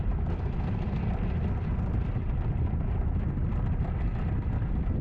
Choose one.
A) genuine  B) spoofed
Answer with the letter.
A